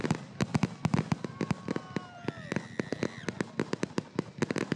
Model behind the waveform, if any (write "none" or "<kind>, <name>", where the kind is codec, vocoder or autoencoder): none